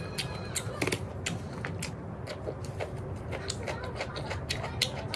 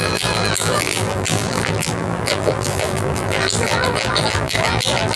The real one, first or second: first